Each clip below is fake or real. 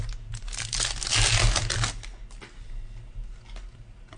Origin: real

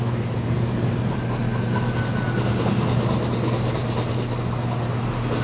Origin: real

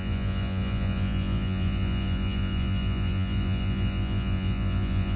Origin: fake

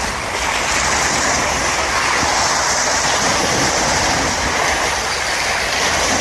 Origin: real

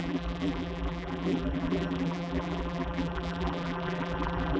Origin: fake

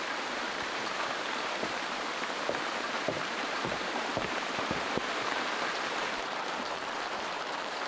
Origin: fake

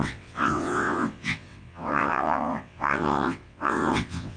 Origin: fake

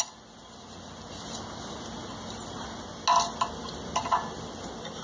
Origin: real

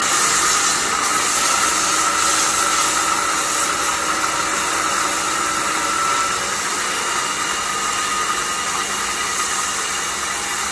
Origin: real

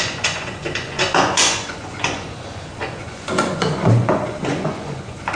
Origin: fake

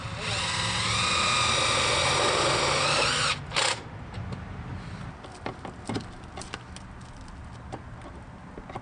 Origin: real